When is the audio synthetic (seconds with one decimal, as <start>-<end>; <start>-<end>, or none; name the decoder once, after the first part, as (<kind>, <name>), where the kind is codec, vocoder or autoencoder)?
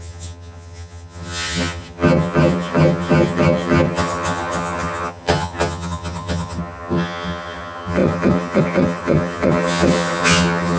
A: 0.0-10.8 (vocoder, HiFi-GAN)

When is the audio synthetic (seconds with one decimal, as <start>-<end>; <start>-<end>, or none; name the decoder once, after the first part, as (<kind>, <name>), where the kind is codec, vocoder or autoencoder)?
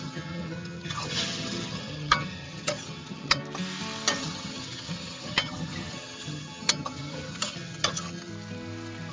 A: 0.0-3.4 (vocoder, HiFi-GAN); 4.2-8.3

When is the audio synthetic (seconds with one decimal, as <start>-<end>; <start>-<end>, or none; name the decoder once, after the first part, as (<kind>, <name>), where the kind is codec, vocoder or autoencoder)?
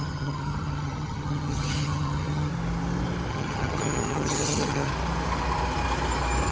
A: 0.0-2.5 (vocoder, HiFi-GAN); 3.3-4.9